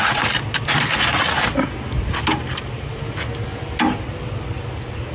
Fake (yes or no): no